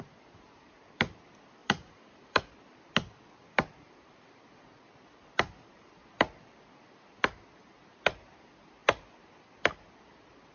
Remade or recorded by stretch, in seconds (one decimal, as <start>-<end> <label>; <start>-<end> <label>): 0.0-1.6 recorded; 1.6-2.5 remade; 2.5-10.5 recorded